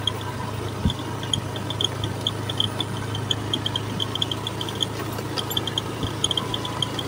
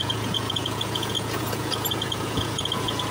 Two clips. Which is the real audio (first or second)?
first